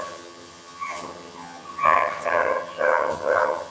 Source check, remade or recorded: remade